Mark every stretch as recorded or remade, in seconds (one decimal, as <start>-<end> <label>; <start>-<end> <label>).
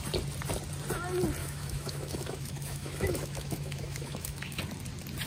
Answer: 0.0-1.4 recorded; 1.4-4.6 remade; 4.6-5.3 recorded